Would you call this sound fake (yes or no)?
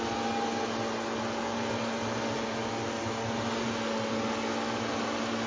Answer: no